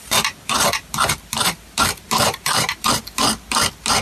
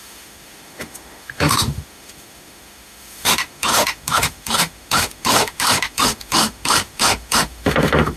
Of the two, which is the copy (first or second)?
second